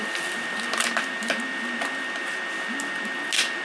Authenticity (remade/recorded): recorded